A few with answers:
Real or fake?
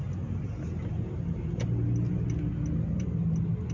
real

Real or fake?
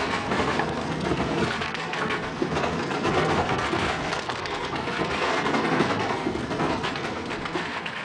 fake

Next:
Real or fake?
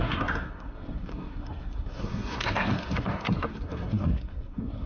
fake